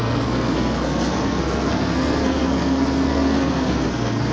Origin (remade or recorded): remade